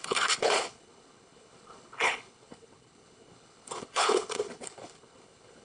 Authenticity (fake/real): fake